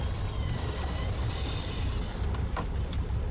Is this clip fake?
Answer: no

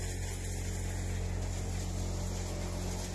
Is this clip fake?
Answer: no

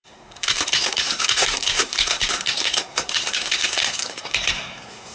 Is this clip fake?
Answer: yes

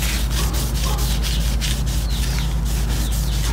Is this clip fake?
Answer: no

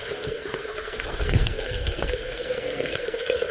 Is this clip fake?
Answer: yes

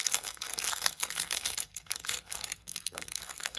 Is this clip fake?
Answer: yes